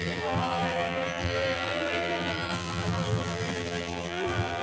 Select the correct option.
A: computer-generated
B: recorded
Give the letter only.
A